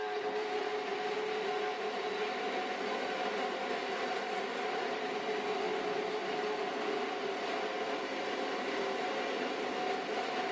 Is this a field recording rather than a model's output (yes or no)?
yes